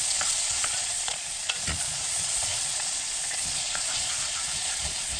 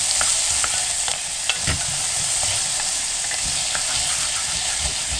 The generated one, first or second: first